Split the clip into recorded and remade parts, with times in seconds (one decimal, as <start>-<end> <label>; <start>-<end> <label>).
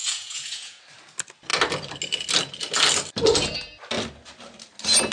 0.0-0.8 remade; 0.8-5.1 recorded